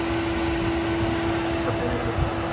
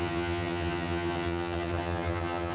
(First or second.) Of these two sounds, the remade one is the second